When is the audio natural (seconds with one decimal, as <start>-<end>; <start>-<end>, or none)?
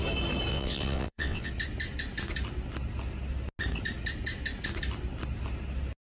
0.0-0.5; 1.5-6.0